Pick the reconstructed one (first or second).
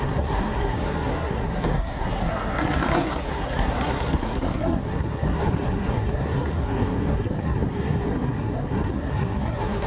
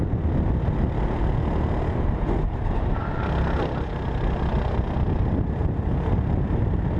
first